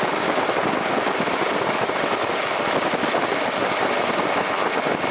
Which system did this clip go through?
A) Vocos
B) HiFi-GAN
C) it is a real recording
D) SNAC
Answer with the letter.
C